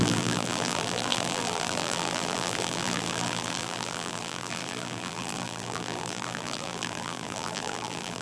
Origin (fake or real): fake